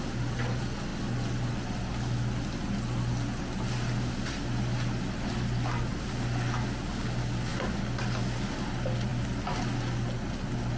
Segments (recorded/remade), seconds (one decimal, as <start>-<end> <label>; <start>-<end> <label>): 0.0-10.8 recorded